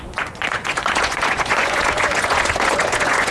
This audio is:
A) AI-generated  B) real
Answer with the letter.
A